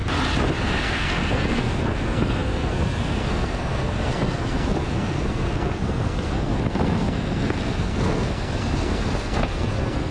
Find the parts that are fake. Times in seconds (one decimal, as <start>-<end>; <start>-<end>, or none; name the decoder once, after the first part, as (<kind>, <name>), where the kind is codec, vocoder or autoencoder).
0.8-10.1 (codec, SNAC)